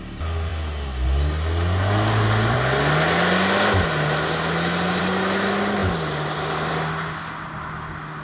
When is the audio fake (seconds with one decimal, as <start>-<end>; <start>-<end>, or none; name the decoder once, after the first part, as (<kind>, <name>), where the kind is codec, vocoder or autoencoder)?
none